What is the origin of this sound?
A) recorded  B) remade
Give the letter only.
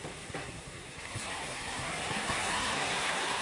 B